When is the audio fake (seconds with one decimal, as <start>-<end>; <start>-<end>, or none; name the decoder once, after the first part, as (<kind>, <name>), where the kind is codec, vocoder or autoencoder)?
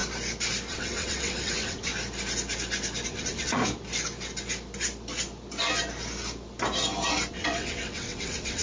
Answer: 0.7-1.9 (vocoder, WaveNeXt); 3.1-3.6; 7.3-8.6